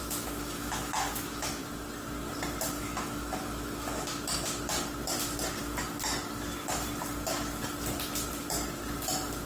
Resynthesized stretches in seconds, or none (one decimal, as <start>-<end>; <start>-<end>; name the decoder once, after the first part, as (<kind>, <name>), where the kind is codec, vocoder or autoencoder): 0.0-1.6 (autoencoder, DAC-VAE); 2.8-4.1